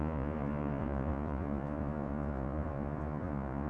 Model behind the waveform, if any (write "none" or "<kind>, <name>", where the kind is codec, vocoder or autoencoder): vocoder, Vocos